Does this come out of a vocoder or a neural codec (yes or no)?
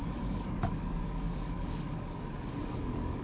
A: yes